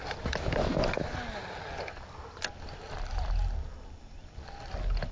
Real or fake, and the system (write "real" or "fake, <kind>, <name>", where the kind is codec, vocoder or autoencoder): real